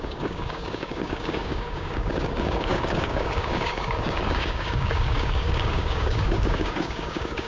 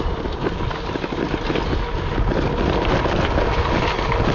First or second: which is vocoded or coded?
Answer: first